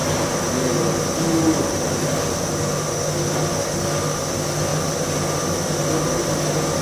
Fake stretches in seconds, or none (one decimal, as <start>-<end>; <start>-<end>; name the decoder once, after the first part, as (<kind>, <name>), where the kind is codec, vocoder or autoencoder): none